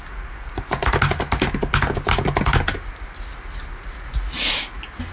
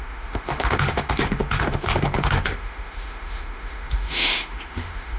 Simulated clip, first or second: second